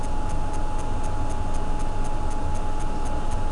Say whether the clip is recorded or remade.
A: recorded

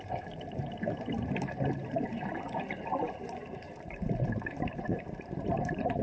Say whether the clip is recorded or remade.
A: remade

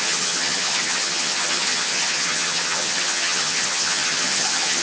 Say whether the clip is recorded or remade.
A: remade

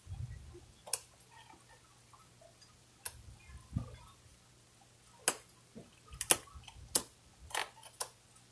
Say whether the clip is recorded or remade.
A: recorded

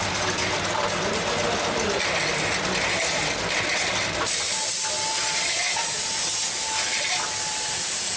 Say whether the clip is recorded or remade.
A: recorded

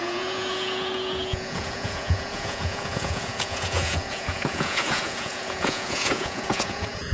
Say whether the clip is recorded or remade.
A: remade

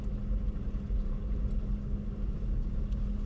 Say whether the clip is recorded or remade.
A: recorded